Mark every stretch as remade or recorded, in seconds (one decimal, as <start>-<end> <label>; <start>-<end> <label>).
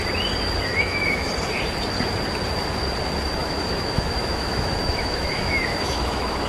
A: 0.0-0.7 recorded; 0.7-1.3 remade; 1.3-3.4 recorded; 3.4-6.5 remade